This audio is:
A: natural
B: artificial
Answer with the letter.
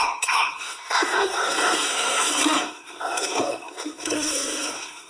B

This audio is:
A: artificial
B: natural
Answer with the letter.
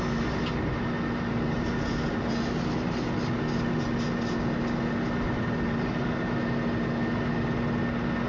B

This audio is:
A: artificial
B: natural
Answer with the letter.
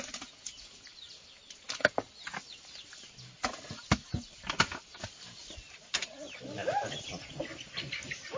B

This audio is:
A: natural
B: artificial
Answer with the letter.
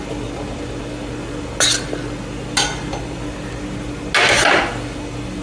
A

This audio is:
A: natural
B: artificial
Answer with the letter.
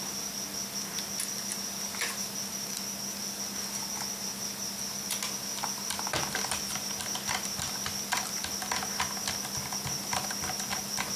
A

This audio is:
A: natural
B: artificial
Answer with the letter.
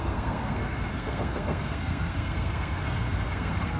B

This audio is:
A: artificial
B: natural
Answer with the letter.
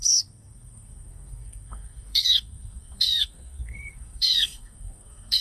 A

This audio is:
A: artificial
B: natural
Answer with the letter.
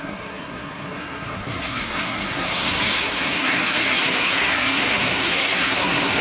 A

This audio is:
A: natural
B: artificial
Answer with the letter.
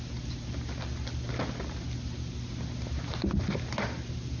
A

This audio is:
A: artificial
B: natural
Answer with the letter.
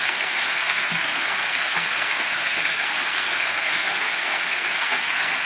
A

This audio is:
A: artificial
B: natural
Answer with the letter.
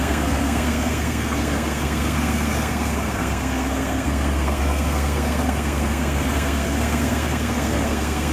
A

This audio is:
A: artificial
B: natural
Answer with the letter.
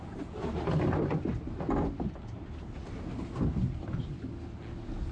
B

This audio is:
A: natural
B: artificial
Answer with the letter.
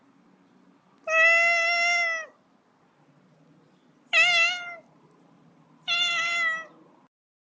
A